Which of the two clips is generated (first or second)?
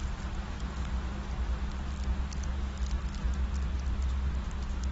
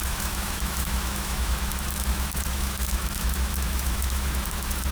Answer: second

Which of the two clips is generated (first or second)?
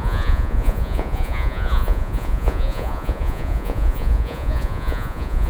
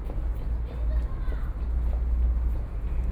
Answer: first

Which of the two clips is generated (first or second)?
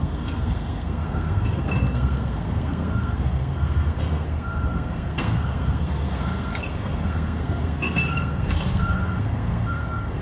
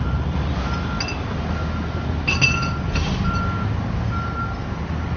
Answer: first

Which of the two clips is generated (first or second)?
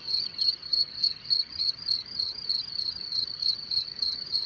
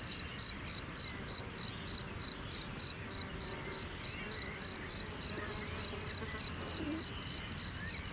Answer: first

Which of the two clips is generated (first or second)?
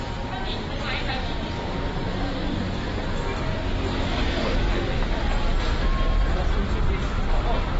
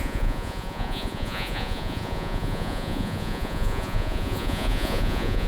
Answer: second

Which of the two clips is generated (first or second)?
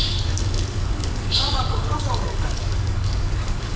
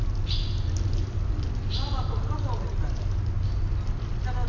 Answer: first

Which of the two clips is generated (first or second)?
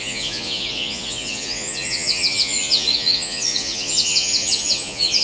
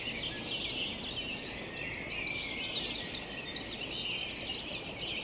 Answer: first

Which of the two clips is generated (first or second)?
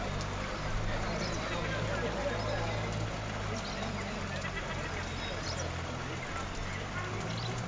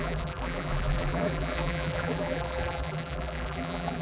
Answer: second